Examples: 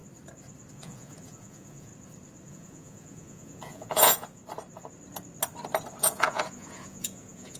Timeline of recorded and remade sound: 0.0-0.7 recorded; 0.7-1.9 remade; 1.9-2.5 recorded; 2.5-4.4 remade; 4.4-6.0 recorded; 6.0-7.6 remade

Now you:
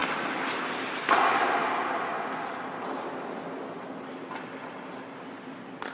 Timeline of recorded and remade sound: 0.0-5.9 recorded

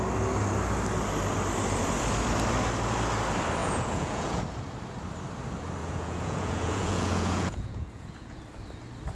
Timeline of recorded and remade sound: 0.0-3.6 recorded; 3.6-4.4 remade; 4.4-5.8 recorded; 5.8-8.4 remade; 8.4-9.1 recorded

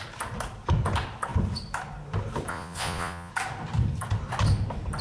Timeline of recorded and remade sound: 0.0-2.5 recorded; 2.5-3.3 remade; 3.3-5.0 recorded

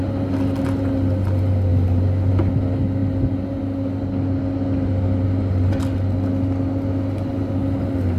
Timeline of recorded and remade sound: 0.0-8.2 recorded

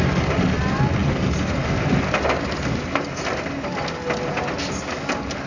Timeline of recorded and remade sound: 0.0-5.5 recorded